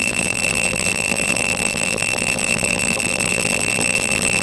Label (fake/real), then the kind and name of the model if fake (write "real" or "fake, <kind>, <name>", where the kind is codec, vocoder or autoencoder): fake, vocoder, BigVGAN v2